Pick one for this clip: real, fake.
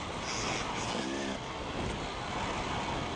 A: real